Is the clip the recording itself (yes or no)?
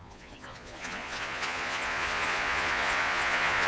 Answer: no